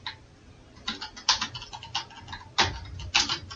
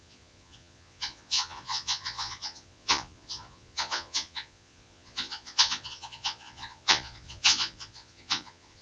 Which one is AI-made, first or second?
second